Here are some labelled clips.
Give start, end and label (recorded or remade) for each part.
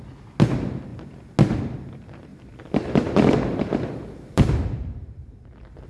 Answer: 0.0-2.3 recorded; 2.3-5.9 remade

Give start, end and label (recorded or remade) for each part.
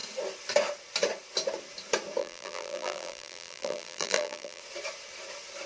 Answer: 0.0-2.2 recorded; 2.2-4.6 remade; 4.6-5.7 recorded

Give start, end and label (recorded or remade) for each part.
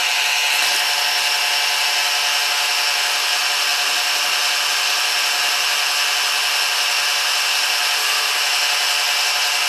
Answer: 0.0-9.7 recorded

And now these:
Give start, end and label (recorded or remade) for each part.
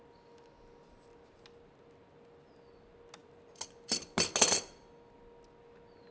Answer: 0.0-6.1 recorded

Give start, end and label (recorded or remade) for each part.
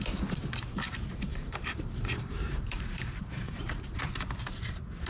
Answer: 0.0-1.3 recorded; 1.3-4.0 remade; 4.0-5.1 recorded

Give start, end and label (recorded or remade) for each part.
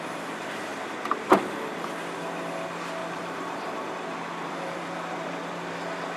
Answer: 0.0-3.0 recorded; 3.0-5.7 remade; 5.7-6.2 recorded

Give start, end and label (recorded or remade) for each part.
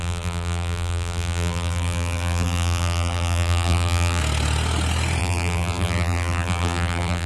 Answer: 0.0-4.2 remade; 4.2-5.2 recorded; 5.2-7.3 remade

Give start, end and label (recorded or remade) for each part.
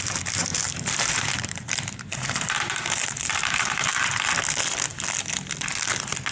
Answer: 0.0-0.5 recorded; 0.5-4.3 remade; 4.3-6.3 recorded